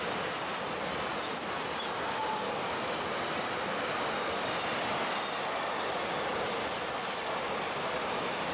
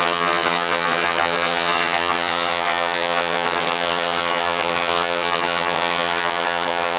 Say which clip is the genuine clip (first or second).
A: first